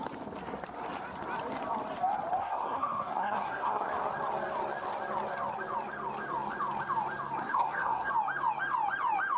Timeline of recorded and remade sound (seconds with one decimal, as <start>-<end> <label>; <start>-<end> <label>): 0.0-2.4 recorded; 2.4-3.9 remade; 3.9-7.4 recorded; 7.4-8.1 remade; 8.1-9.4 recorded